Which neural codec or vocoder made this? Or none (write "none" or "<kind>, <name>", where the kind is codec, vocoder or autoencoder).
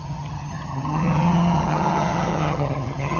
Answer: vocoder, HiFi-GAN